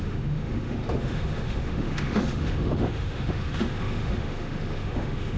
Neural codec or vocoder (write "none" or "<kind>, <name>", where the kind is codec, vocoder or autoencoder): autoencoder, DAC-VAE